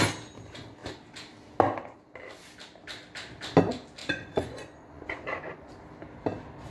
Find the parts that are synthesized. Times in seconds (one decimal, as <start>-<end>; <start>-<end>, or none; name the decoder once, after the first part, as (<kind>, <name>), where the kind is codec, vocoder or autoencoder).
4.0-5.7 (vocoder, Vocos)